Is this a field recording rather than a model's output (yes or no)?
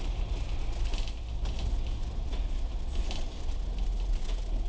yes